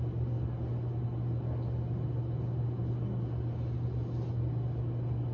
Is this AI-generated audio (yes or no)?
no